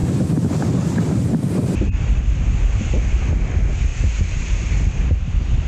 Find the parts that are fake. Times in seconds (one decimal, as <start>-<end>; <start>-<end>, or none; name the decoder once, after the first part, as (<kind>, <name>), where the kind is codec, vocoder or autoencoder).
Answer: 0.0-3.4 (vocoder, BigVGAN v2); 3.9-5.7